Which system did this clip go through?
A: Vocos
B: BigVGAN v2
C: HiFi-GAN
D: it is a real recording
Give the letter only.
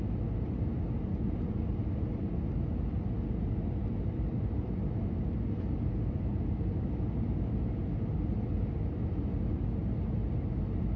D